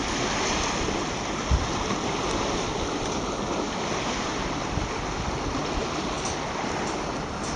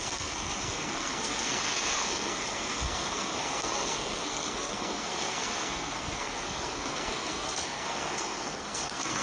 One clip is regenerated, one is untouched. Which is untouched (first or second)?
first